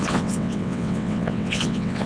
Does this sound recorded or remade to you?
remade